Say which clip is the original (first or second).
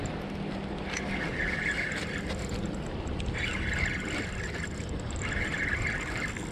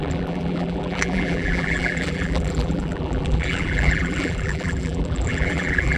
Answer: first